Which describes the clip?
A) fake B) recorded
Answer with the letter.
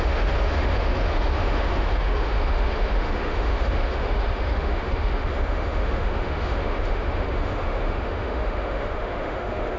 A